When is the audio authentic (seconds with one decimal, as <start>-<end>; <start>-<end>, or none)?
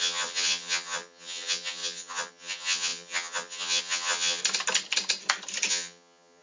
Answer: 4.4-5.7